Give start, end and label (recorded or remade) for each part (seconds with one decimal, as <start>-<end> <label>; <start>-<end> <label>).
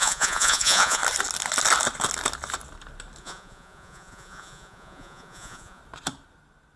0.0-1.0 remade; 1.0-3.2 recorded; 3.2-5.8 remade; 5.8-6.8 recorded